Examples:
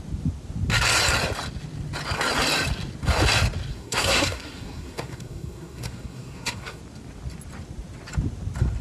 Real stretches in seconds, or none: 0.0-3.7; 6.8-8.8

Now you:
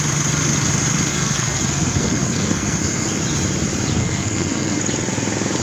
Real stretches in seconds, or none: 0.0-1.1; 3.2-4.0; 4.8-5.6